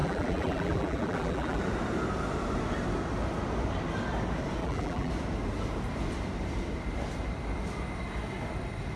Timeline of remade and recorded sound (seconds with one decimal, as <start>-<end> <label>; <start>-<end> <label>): 0.0-1.6 remade; 1.6-4.6 recorded; 4.6-5.1 remade; 5.1-9.0 recorded